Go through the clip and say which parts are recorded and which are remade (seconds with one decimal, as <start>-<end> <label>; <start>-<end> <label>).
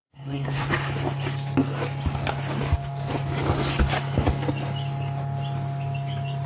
0.0-0.7 remade; 0.7-6.5 recorded